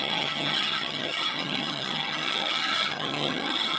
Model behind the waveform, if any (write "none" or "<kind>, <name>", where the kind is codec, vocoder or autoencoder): vocoder, HiFi-GAN